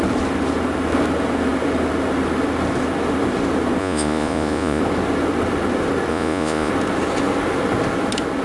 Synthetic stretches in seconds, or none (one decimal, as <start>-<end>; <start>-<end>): 3.8-4.8; 6.1-6.7